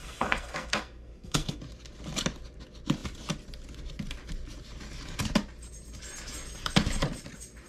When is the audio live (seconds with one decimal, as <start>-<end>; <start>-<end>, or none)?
1.6-7.7